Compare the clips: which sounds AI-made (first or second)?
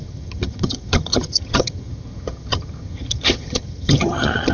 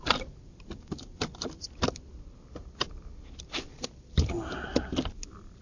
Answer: first